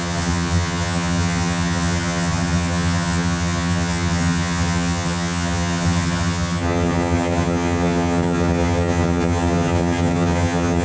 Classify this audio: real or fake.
fake